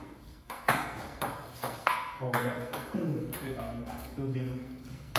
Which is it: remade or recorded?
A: remade